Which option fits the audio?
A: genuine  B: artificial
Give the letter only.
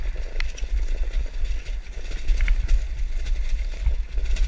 A